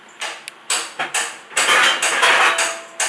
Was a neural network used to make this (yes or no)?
no